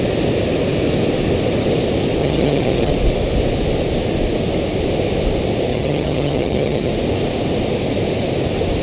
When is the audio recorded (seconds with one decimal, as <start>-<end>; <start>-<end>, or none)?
0.0-2.2; 2.9-5.7; 6.9-8.8